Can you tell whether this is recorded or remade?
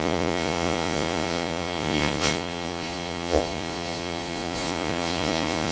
remade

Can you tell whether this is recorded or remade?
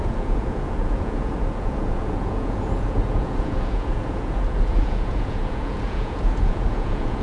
remade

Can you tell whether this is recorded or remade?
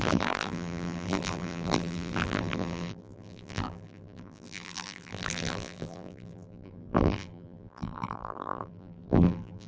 remade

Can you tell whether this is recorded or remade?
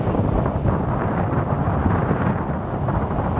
recorded